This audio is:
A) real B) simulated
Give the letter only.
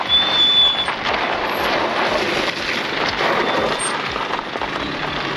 A